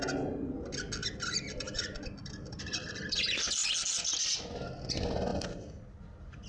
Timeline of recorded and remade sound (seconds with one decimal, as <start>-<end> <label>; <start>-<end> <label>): 0.0-1.0 recorded; 1.0-3.2 remade; 3.2-6.5 recorded